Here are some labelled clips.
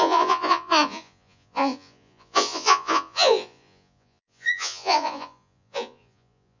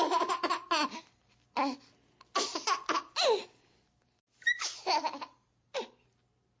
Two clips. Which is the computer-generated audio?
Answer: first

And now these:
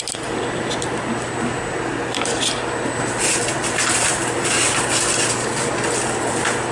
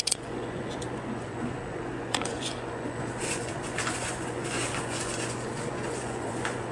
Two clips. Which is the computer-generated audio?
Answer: second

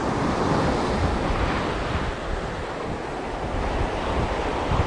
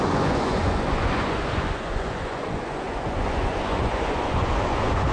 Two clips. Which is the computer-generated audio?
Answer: second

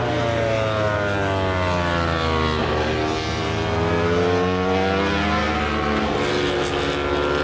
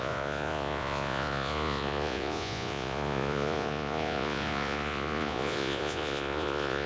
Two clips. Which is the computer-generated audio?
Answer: second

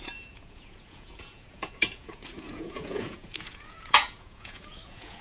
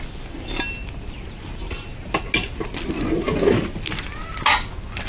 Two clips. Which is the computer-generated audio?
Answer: first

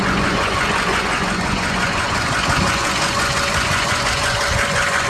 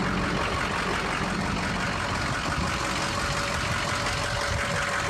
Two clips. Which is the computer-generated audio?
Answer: first